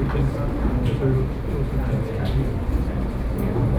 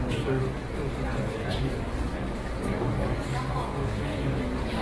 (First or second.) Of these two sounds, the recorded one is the first